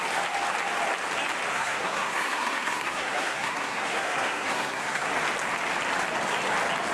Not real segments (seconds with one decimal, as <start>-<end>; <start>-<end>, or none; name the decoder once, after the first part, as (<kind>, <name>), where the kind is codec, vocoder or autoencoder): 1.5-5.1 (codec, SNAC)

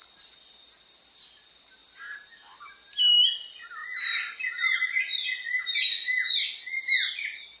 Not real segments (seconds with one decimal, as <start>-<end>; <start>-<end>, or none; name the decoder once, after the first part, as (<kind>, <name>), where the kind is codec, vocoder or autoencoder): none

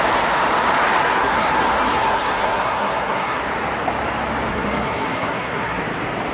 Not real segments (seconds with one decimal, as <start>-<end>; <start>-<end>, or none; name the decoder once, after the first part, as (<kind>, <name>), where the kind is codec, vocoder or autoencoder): 1.1-3.4 (codec, SNAC); 4.5-5.8

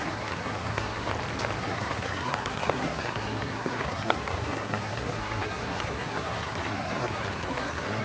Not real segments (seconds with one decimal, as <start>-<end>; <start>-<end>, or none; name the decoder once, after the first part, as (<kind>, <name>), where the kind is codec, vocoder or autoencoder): 0.0-1.1 (codec, SNAC); 1.6-8.0

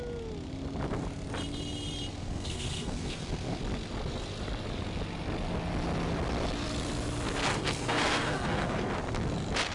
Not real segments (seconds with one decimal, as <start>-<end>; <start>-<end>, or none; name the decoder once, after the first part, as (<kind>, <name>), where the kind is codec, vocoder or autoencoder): 2.1-3.6 (codec, SNAC); 7.5-8.9

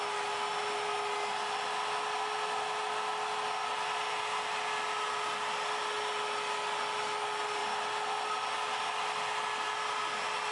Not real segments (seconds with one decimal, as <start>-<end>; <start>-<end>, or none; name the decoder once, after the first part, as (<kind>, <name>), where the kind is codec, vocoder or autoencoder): none

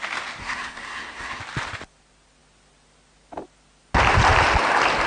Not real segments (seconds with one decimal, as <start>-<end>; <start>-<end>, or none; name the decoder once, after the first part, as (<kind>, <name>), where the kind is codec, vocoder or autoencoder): 0.4-1.4 (codec, SNAC)